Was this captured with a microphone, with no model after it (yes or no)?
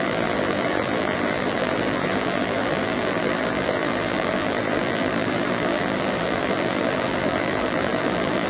no